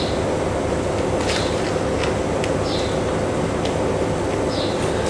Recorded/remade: recorded